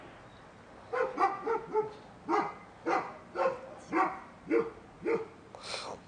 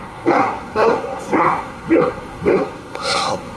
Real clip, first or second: first